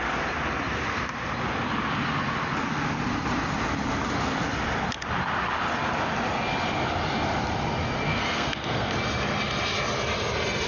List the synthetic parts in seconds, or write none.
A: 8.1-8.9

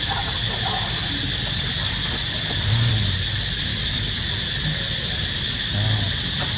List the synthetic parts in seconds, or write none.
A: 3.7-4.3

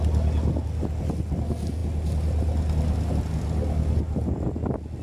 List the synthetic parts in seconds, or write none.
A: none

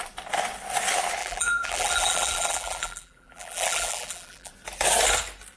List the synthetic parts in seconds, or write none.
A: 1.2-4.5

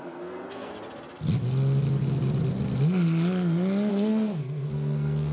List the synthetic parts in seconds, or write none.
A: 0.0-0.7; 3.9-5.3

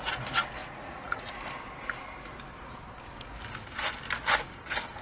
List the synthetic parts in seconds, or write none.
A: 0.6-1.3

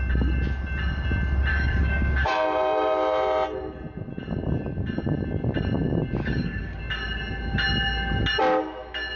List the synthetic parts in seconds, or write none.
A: 1.5-2.3; 6.2-6.8

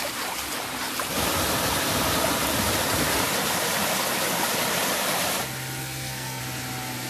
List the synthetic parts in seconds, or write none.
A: 5.8-6.4